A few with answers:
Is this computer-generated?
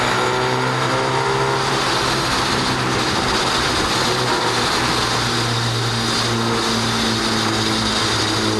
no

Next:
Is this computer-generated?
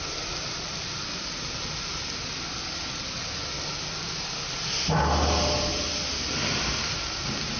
no